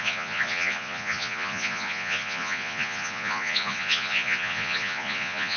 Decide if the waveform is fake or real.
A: fake